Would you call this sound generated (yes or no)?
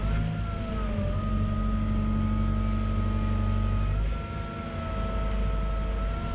no